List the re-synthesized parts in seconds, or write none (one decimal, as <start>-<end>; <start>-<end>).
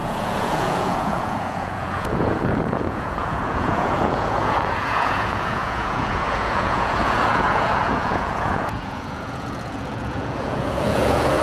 0.0-11.4